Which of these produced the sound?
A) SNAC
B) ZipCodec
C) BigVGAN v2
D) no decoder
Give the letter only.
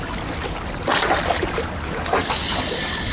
D